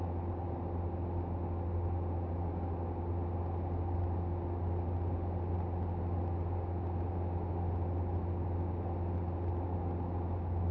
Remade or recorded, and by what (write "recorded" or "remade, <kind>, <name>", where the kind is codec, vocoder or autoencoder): recorded